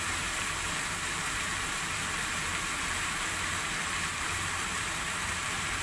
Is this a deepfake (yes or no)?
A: yes